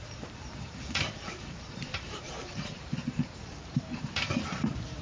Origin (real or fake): fake